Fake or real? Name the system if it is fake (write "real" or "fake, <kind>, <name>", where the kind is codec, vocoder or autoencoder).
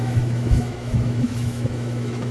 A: fake, autoencoder, DAC-VAE